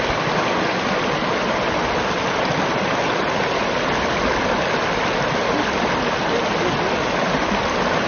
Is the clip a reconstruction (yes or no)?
no